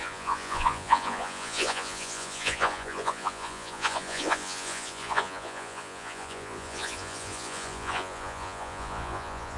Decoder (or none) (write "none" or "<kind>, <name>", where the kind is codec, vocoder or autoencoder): vocoder, Vocos